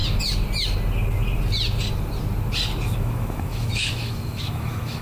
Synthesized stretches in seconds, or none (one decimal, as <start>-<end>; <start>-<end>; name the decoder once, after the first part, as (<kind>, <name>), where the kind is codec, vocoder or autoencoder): 3.0-5.0 (autoencoder, DAC-VAE)